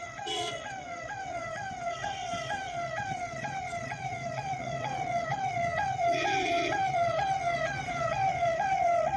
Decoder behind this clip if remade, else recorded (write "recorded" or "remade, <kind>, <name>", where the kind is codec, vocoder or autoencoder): remade, vocoder, WaveNeXt